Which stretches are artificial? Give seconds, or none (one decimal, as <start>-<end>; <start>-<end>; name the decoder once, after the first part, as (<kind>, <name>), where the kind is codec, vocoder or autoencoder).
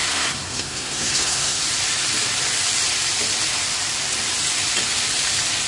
0.0-1.6 (codec, SNAC)